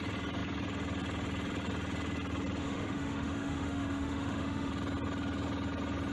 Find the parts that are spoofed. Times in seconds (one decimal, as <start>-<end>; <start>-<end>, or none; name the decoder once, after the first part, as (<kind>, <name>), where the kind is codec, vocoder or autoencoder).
2.6-4.7 (autoencoder, DAC-VAE)